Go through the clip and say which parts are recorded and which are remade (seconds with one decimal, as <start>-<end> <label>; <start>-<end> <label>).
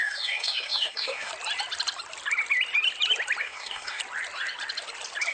0.0-1.3 remade; 1.3-3.4 recorded; 3.4-4.0 remade; 4.0-5.3 recorded